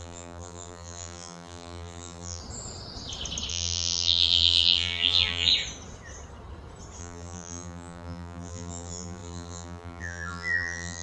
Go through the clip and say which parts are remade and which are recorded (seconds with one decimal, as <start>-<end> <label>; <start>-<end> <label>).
0.0-2.4 remade; 2.4-3.5 recorded; 3.5-5.5 remade; 5.5-7.0 recorded; 7.0-11.0 remade